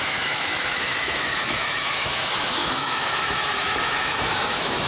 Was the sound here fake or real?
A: fake